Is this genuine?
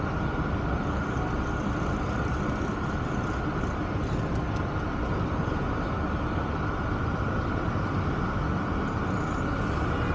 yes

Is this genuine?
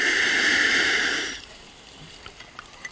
yes